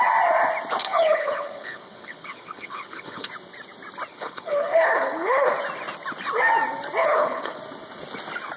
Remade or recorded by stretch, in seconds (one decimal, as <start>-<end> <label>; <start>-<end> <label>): 0.0-0.8 recorded; 0.8-3.3 remade; 3.3-4.1 recorded; 4.1-5.5 remade; 5.5-7.0 recorded; 7.0-7.6 remade; 7.6-8.6 recorded